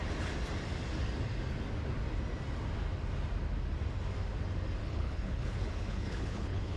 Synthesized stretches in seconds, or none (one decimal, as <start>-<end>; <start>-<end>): 4.8-6.8